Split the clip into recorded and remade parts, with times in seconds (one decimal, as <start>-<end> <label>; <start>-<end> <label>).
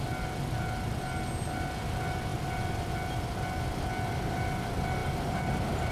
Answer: 0.0-5.9 recorded